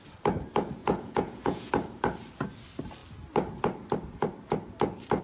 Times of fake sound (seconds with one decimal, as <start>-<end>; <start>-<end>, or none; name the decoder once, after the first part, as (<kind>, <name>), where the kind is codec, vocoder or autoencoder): 0.8-1.7 (vocoder, Vocos)